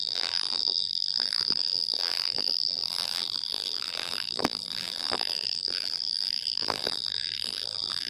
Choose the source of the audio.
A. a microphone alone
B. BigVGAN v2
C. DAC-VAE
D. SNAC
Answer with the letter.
B